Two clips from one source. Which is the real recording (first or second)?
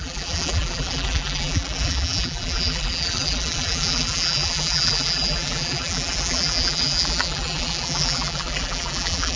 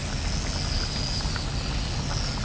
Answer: second